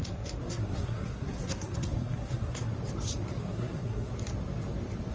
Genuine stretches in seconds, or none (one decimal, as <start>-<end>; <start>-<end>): 2.7-3.4; 4.1-5.1